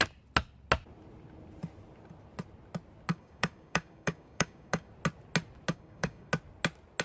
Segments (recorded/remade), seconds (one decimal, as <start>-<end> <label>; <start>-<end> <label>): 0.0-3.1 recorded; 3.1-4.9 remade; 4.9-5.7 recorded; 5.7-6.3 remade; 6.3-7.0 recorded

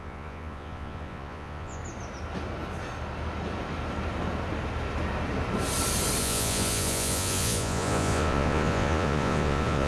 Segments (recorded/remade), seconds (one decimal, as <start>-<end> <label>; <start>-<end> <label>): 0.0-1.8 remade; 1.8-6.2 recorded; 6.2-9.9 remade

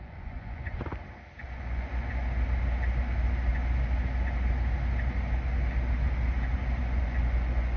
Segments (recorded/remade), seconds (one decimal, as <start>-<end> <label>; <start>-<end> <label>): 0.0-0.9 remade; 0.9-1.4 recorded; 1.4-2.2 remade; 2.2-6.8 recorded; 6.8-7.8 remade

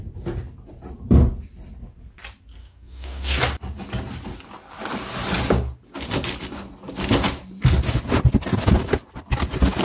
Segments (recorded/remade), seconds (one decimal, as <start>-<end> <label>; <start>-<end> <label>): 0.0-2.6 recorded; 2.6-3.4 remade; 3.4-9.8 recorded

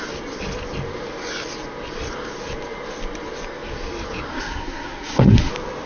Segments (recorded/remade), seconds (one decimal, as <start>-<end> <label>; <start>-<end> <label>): 0.0-4.3 recorded; 4.3-5.5 remade; 5.5-5.9 recorded